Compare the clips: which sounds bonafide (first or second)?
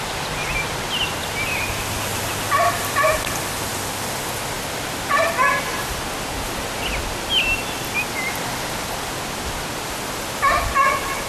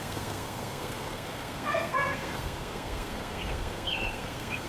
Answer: first